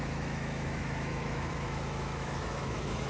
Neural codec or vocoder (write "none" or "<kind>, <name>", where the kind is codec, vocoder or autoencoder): autoencoder, DAC-VAE